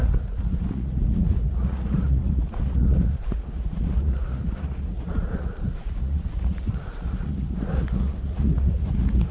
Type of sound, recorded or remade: remade